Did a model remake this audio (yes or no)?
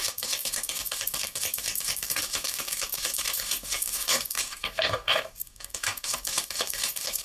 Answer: yes